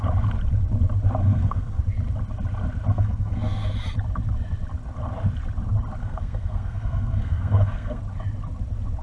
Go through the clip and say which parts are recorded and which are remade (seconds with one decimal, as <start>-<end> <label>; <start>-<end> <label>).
0.0-1.2 recorded; 1.2-1.8 remade; 1.8-2.9 recorded; 2.9-3.7 remade; 3.7-6.0 recorded; 6.0-8.0 remade; 8.0-9.0 recorded